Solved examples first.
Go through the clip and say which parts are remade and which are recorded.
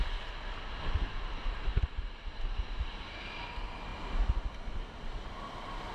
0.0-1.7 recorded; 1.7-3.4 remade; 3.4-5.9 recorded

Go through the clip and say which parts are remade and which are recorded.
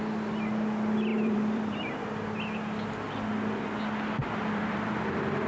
0.0-1.1 recorded; 1.1-2.0 remade; 2.0-4.2 recorded; 4.2-5.1 remade; 5.1-5.5 recorded